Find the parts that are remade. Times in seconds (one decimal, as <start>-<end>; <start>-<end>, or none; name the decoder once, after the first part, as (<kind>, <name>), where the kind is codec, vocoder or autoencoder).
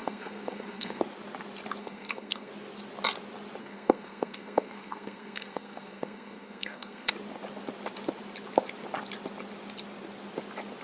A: 0.0-1.0 (codec, SNAC); 1.8-2.5; 3.6-7.1